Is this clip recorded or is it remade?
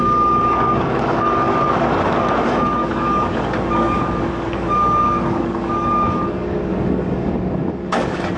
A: remade